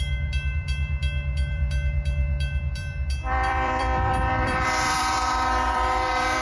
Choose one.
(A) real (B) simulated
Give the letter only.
B